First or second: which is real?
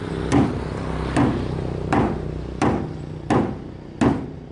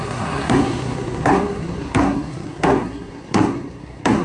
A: first